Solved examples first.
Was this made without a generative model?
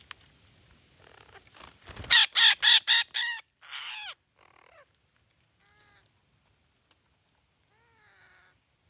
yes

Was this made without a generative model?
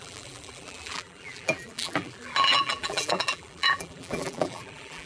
no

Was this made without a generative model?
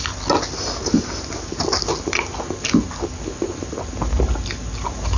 yes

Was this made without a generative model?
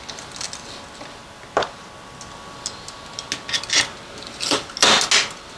yes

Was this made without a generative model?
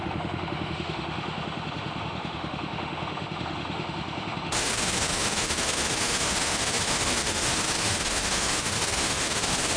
no